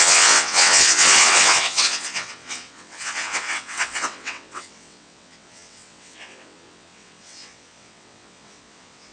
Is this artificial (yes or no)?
yes